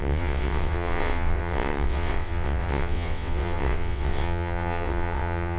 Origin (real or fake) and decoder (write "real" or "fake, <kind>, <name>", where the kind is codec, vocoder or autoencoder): fake, vocoder, WaveNeXt